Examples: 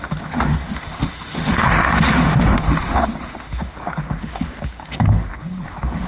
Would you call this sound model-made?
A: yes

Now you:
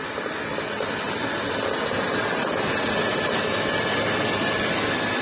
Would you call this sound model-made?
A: no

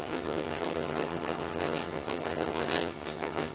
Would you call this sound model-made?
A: yes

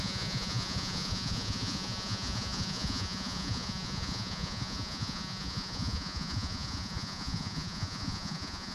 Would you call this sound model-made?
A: yes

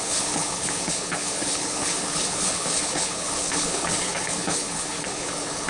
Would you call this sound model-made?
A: yes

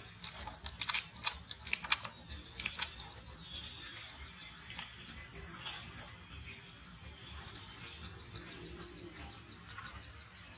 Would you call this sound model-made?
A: no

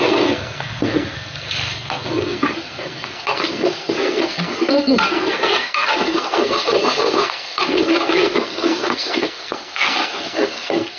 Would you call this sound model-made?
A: yes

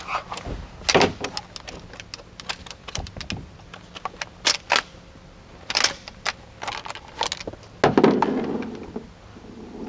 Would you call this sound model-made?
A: no